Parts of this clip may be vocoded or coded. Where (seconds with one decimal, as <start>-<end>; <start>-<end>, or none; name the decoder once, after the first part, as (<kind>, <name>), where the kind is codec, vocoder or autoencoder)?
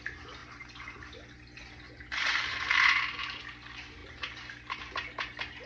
0.4-2.9 (vocoder, BigVGAN v2); 4.0-4.8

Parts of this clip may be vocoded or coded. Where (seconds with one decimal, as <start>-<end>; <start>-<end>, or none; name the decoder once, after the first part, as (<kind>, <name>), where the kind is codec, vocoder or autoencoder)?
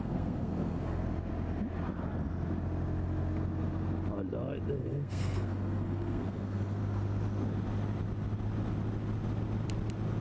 0.0-1.0 (codec, SNAC); 4.8-6.8